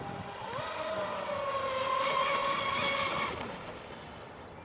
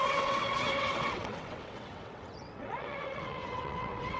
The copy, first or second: second